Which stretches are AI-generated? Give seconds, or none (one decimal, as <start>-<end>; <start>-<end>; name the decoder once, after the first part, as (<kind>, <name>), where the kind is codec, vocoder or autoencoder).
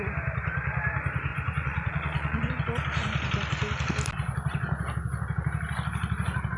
1.3-2.5 (vocoder, Vocos)